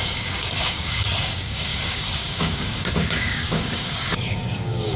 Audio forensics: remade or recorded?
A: remade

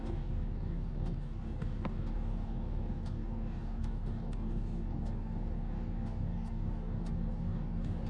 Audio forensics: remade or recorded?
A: remade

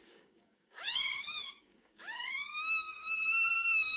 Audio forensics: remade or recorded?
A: remade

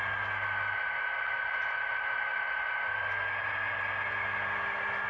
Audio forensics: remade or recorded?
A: recorded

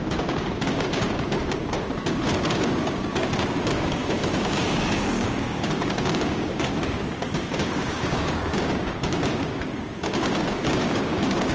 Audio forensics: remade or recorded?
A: remade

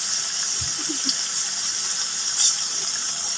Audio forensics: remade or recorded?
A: recorded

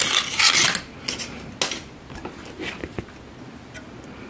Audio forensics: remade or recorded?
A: recorded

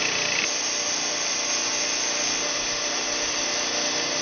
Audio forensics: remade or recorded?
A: recorded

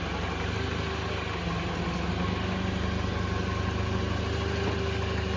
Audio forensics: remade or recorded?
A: recorded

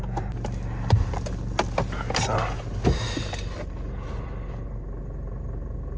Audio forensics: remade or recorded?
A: recorded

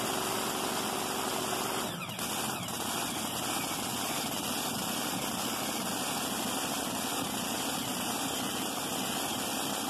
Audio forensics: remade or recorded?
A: recorded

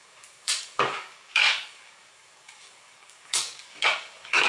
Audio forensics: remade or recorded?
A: remade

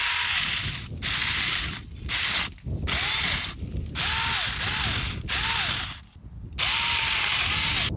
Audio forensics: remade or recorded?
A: recorded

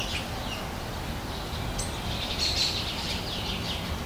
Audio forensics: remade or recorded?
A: recorded